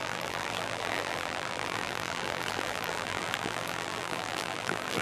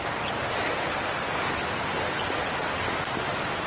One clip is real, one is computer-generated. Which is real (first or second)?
second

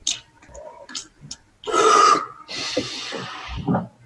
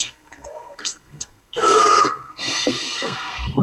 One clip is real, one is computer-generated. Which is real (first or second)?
first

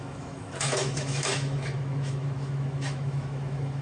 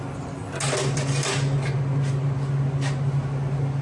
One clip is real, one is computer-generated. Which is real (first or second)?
second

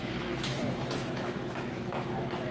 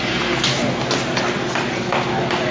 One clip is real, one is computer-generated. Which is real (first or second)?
second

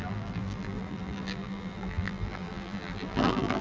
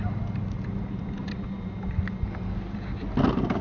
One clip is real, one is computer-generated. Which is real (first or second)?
second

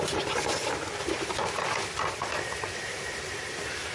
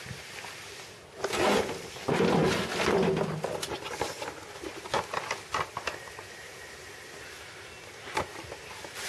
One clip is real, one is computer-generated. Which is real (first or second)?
second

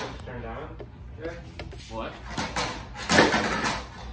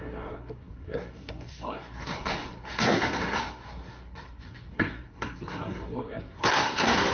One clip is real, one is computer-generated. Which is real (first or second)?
first